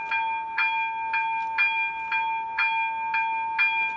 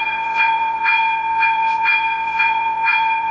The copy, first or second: second